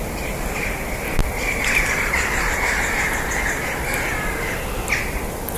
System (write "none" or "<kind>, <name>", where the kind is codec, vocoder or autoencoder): none